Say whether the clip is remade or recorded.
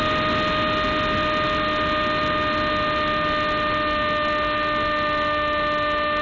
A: recorded